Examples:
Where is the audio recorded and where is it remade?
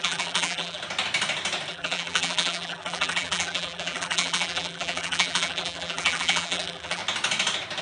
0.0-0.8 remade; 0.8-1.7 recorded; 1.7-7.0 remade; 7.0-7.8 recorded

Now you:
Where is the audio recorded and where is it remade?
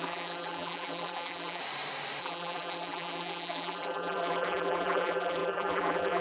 0.0-1.6 remade; 1.6-2.2 recorded; 2.2-6.2 remade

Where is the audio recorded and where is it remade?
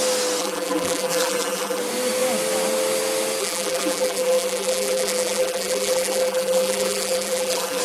0.0-0.4 recorded; 0.4-1.8 remade; 1.8-3.4 recorded; 3.4-7.8 remade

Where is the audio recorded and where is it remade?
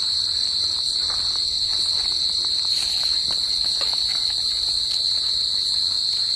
0.0-1.7 recorded; 1.7-2.2 remade; 2.2-2.7 recorded; 2.7-4.6 remade; 4.6-6.4 recorded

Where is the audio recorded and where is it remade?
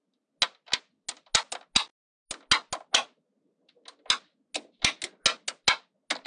0.0-6.3 recorded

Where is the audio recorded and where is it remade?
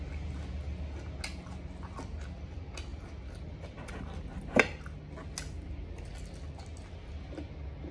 0.0-2.9 recorded; 2.9-3.9 remade; 3.9-7.9 recorded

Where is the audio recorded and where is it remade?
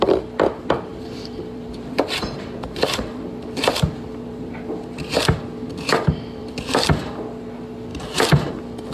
0.0-0.9 recorded; 0.9-5.2 remade; 5.2-6.4 recorded; 6.4-7.2 remade; 7.2-7.9 recorded; 7.9-8.5 remade; 8.5-8.9 recorded